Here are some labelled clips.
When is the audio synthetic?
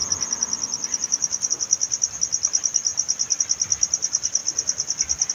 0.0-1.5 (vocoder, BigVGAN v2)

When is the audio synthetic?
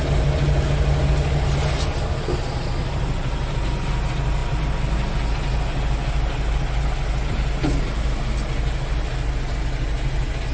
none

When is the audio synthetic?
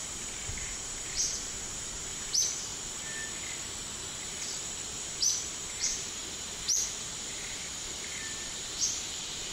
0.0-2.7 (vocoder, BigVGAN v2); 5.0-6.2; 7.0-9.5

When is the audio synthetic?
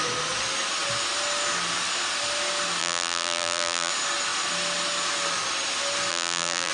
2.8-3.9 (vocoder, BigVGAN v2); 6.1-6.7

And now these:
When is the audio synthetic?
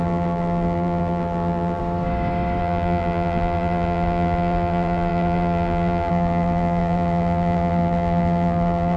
0.0-1.8 (vocoder, BigVGAN v2); 2.6-9.0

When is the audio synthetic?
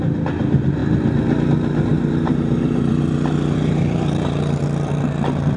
1.9-4.6 (vocoder, BigVGAN v2)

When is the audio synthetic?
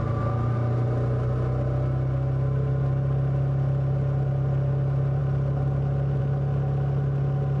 none